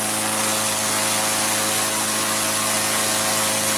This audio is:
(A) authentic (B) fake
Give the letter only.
A